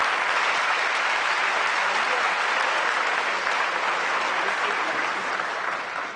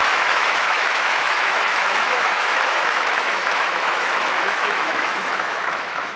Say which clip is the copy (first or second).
second